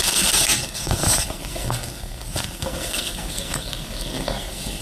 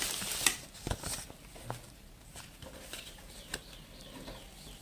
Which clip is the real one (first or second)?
second